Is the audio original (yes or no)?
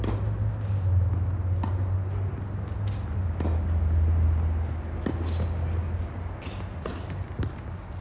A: yes